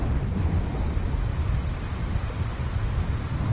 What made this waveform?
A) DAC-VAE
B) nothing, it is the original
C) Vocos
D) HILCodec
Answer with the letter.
B